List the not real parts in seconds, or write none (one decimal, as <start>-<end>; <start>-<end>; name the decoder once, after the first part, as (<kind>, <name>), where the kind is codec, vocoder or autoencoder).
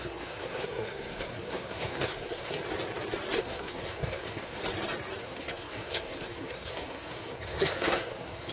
0.0-2.6 (codec, SNAC); 3.4-4.6; 5.2-8.5